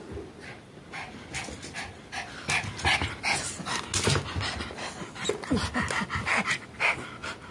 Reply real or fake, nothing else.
real